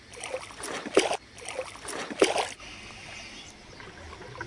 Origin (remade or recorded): recorded